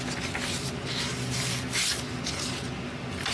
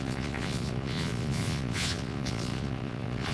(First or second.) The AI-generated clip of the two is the second